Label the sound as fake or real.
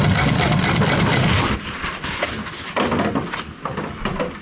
real